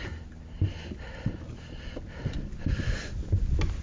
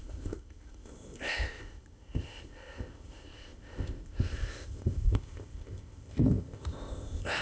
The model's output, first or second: second